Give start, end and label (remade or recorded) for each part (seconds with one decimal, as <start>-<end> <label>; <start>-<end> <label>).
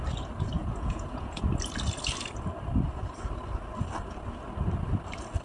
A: 0.0-0.6 recorded; 0.6-1.4 remade; 1.4-5.4 recorded